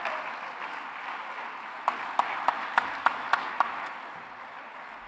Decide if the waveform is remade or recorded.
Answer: recorded